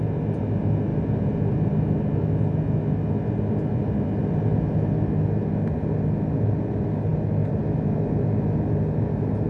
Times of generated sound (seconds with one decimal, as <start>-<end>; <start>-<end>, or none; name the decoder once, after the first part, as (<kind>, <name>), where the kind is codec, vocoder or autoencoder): 0.9-1.7 (vocoder, BigVGAN v2)